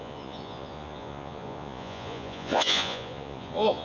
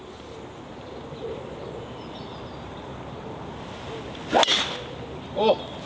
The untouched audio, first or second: second